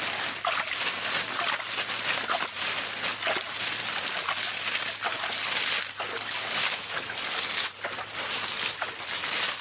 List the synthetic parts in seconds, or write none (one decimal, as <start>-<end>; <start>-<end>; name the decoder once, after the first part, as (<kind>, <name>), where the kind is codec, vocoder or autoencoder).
none